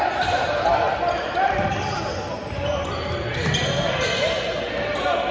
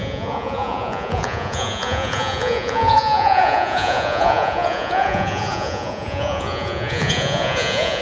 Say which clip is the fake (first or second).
second